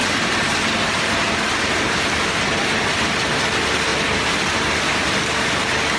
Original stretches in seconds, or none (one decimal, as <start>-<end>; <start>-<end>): 0.0-6.0